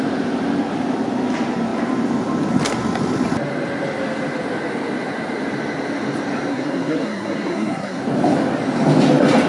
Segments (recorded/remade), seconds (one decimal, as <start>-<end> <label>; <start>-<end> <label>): 0.0-6.5 recorded; 6.5-8.0 remade; 8.0-9.5 recorded